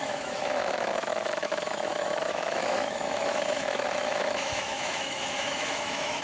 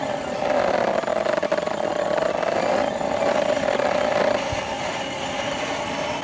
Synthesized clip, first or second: first